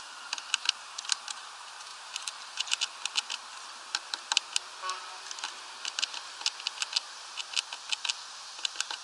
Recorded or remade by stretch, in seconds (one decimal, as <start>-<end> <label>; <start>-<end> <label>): 0.0-1.9 recorded; 1.9-2.8 remade; 2.8-9.0 recorded